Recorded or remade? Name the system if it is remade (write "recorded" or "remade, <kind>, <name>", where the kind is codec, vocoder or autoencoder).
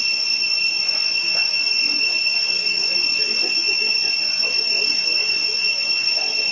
remade, vocoder, Vocos